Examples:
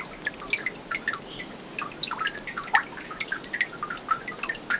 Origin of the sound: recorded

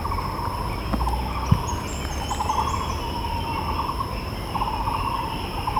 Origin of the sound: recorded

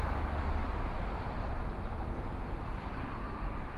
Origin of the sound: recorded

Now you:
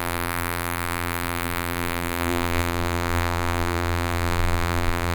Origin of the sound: remade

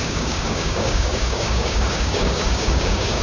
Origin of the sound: remade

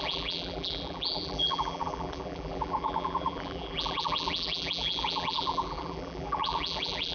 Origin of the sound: remade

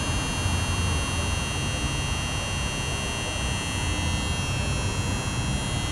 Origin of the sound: recorded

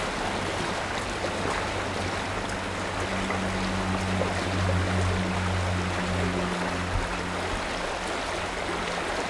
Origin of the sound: recorded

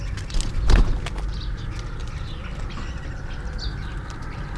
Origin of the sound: recorded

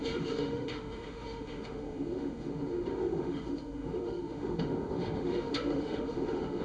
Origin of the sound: remade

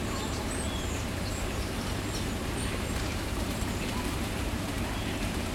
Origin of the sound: remade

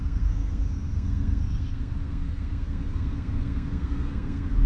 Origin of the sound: remade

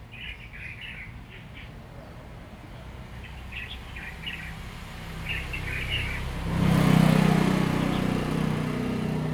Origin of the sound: recorded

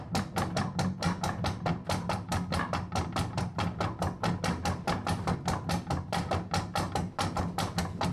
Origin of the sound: recorded